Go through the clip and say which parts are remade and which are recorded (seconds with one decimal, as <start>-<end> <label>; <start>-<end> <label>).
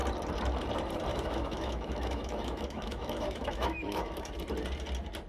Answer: 0.0-1.1 recorded; 1.1-4.3 remade; 4.3-5.3 recorded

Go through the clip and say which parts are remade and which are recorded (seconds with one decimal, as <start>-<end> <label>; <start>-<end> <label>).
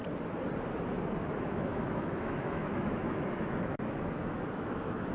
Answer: 0.0-1.2 recorded; 1.2-5.1 remade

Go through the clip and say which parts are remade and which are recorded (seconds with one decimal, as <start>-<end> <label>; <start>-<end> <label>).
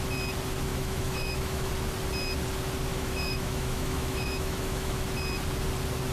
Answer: 0.0-0.7 recorded; 0.7-1.7 remade; 1.7-2.9 recorded; 2.9-5.0 remade; 5.0-6.1 recorded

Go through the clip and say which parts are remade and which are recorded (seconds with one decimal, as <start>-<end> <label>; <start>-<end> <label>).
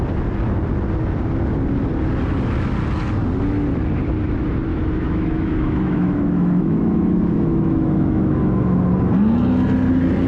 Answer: 0.0-4.7 recorded; 4.7-8.8 remade; 8.8-10.3 recorded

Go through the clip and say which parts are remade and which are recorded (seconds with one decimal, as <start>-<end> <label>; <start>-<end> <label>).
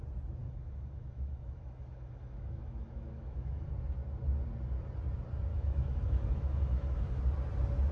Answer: 0.0-0.4 recorded; 0.4-3.7 remade; 3.7-5.5 recorded; 5.5-7.2 remade; 7.2-7.9 recorded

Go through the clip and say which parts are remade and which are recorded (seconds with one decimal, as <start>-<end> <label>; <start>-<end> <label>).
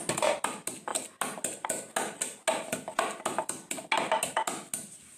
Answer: 0.0-5.2 recorded